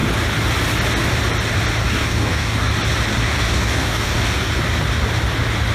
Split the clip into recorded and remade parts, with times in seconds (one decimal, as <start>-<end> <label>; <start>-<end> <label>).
0.0-1.8 recorded; 1.8-2.7 remade; 2.7-3.2 recorded; 3.2-4.5 remade; 4.5-5.7 recorded